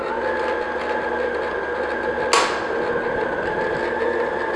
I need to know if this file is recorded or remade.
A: recorded